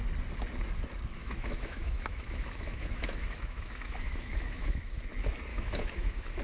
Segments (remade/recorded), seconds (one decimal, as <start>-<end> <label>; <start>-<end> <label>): 0.0-1.2 recorded; 1.2-5.0 remade; 5.0-5.5 recorded; 5.5-6.4 remade